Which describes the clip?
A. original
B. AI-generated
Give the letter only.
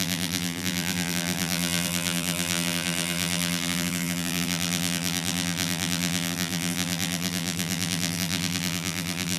B